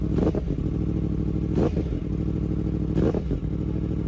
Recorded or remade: recorded